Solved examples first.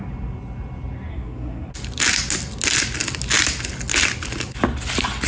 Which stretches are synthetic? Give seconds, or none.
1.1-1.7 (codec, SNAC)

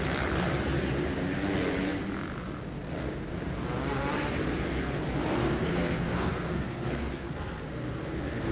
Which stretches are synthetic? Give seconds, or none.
4.5-5.0 (codec, SNAC); 5.4-8.5

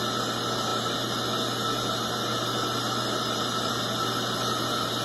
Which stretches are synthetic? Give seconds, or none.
none

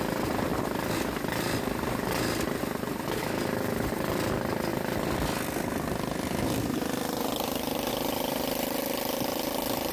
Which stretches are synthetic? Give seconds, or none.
0.5-1.6 (vocoder, BigVGAN v2); 4.7-7.9